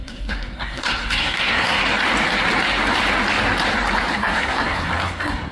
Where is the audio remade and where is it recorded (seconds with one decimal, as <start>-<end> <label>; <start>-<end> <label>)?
0.0-1.8 remade; 1.8-4.1 recorded; 4.1-5.5 remade